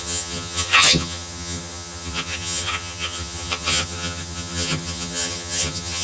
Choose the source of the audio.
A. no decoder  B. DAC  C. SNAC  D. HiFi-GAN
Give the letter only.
D